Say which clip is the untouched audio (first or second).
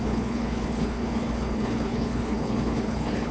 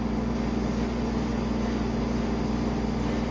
second